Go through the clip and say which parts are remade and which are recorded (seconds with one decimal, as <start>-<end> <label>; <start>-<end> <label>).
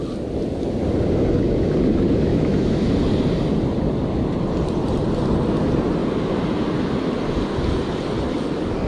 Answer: 0.0-2.3 recorded; 2.3-2.9 remade; 2.9-8.9 recorded